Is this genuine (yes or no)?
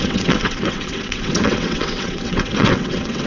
no